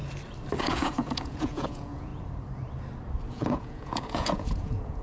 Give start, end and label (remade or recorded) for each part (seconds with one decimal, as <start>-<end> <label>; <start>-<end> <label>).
0.0-0.6 recorded; 0.6-2.1 remade; 2.1-3.3 recorded; 3.3-5.0 remade